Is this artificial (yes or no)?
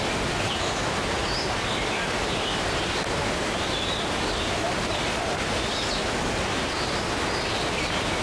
no